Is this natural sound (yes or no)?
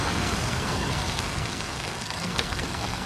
no